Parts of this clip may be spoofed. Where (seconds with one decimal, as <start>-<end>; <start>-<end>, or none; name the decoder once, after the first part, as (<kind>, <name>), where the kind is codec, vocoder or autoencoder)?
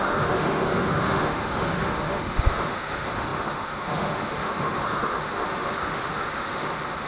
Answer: 0.0-7.1 (autoencoder, DAC-VAE)